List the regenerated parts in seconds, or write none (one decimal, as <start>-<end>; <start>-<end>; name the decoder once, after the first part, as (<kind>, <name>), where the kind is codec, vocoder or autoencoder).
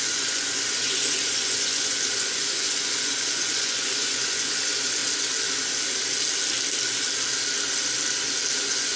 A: 0.0-5.0 (vocoder, Vocos); 8.6-9.0